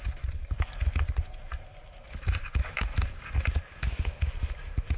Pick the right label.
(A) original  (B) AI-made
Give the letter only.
B